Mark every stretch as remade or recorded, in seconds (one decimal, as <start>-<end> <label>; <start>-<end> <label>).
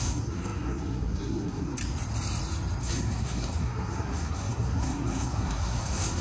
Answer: 0.0-1.8 remade; 1.8-2.8 recorded; 2.8-6.2 remade